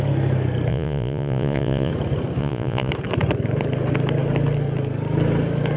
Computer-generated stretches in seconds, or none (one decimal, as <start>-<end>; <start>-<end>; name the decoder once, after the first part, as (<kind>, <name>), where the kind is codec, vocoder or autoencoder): 0.7-1.9 (vocoder, Vocos); 2.4-2.9